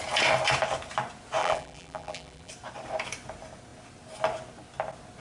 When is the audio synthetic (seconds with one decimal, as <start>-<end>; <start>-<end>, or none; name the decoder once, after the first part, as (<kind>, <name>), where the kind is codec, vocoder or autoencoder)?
1.4-2.5 (vocoder, BigVGAN v2)